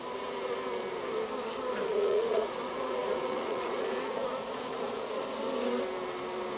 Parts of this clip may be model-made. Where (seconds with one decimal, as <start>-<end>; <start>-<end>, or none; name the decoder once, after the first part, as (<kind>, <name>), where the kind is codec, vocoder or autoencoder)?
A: 1.9-5.4 (vocoder, Vocos)

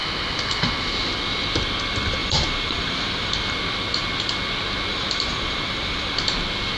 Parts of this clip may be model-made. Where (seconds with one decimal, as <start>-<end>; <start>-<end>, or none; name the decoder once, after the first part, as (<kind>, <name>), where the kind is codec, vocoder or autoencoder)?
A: 2.2-3.3 (vocoder, BigVGAN v2); 4.9-6.1